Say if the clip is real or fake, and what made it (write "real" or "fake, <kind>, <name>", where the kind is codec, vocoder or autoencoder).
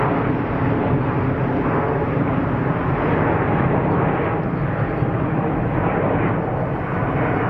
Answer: real